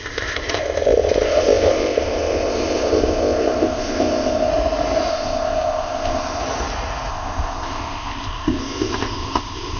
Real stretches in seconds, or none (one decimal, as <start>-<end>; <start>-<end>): 4.5-5.1; 6.4-7.1